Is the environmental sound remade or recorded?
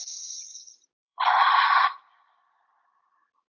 remade